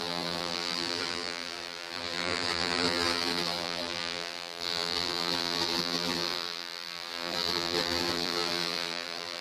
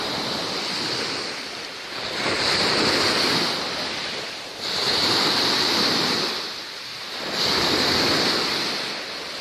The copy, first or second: first